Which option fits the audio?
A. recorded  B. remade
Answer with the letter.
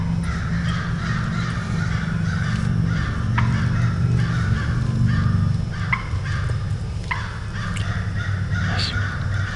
A